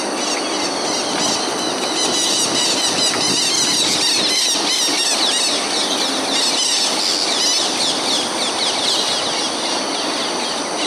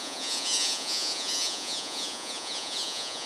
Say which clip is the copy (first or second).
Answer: second